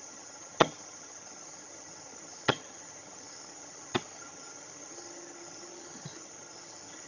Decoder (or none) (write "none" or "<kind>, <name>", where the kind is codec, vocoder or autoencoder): vocoder, HiFi-GAN